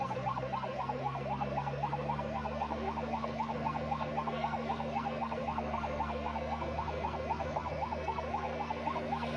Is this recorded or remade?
remade